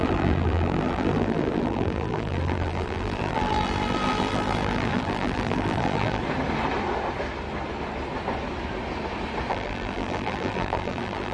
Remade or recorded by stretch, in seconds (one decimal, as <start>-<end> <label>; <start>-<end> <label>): 0.0-6.2 remade; 6.2-9.5 recorded; 9.5-11.3 remade

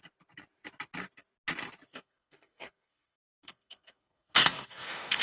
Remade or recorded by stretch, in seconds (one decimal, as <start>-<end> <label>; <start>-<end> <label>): 0.0-1.9 recorded; 1.9-5.2 remade